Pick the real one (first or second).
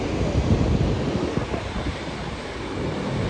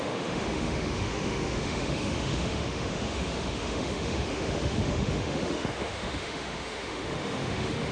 first